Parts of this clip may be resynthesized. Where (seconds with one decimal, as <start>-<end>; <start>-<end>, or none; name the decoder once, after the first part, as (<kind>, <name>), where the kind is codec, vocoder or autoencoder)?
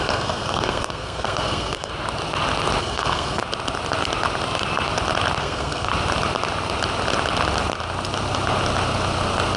0.0-1.9 (codec, SNAC); 2.8-3.4; 5.4-5.9